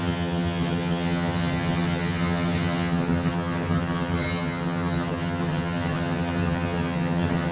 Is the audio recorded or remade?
remade